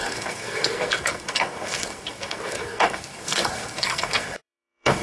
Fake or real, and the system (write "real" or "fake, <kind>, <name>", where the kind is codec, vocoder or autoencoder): fake, codec, SNAC